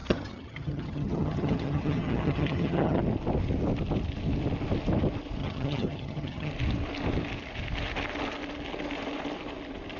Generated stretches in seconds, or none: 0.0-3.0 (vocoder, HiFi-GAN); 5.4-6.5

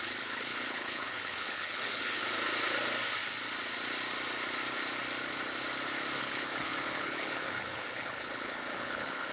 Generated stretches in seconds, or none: 0.0-2.2 (codec, HILCodec); 6.2-9.3

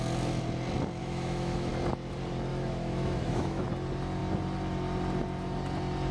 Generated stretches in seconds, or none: 1.0-1.7 (autoencoder, DAC-VAE); 2.5-3.7

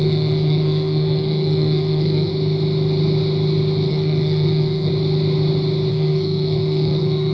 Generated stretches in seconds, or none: 0.0-2.3 (codec, SNAC); 3.9-4.9; 5.9-7.3

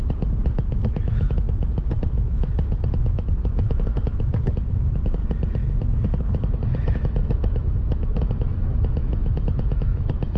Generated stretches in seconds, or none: 0.0-5.2 (autoencoder, DAC-VAE); 6.2-10.4

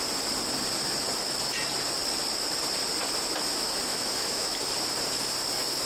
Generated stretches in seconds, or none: 3.9-4.6 (autoencoder, DAC-VAE)